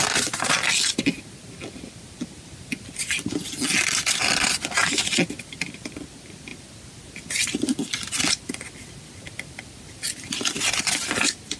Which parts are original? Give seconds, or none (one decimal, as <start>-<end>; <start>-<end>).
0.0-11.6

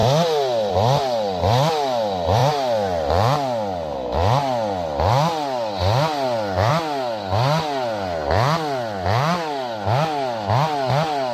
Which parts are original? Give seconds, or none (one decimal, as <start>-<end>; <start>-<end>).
0.0-11.3

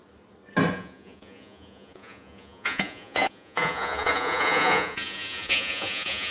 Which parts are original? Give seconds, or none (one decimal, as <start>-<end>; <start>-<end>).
0.0-0.7